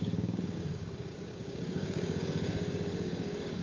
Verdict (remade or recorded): remade